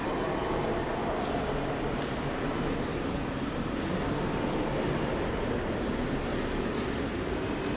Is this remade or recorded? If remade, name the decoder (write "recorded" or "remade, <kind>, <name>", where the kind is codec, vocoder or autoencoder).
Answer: recorded